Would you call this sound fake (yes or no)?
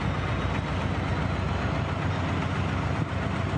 no